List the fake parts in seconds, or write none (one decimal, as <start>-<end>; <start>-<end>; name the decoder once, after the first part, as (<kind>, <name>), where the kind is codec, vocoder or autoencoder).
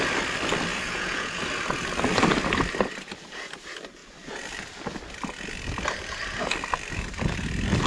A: 0.7-1.4 (vocoder, Vocos)